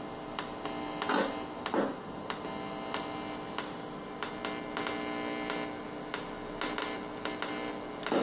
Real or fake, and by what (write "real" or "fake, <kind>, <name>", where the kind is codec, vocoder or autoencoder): real